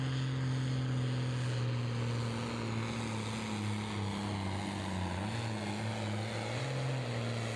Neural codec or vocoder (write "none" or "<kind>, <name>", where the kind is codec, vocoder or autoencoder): none